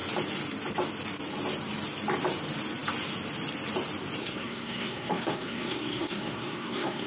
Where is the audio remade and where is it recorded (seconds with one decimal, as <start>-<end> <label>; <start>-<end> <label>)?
0.0-4.2 recorded; 4.2-7.1 remade